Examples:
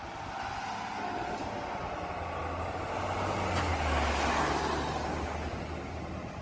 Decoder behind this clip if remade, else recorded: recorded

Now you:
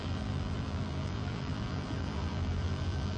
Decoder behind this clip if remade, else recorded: remade, vocoder, BigVGAN v2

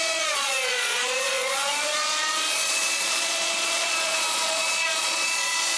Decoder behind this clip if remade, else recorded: remade, vocoder, Vocos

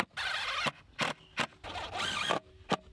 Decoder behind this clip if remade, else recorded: recorded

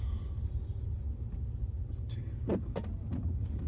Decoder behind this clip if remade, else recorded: recorded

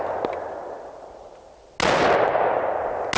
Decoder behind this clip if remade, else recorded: recorded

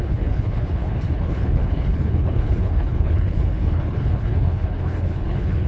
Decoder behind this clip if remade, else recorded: remade, codec, HILCodec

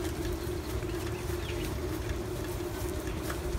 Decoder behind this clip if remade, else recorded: recorded